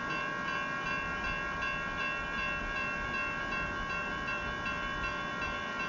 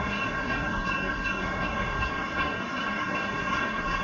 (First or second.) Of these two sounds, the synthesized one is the second